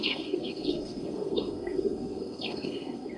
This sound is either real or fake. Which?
fake